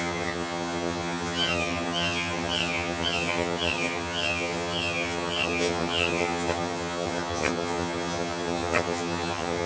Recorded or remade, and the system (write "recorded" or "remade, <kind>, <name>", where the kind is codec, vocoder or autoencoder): remade, vocoder, HiFi-GAN